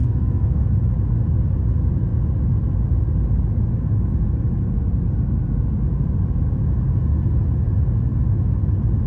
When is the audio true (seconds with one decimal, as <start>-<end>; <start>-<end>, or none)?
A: 0.6-9.1